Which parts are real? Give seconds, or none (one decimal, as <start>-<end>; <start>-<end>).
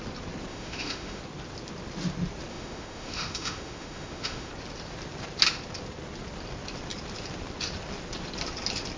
0.0-0.5; 1.2-2.5; 4.5-9.0